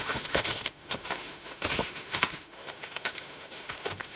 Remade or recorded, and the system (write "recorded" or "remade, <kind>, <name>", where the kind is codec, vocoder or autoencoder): remade, autoencoder, DAC-VAE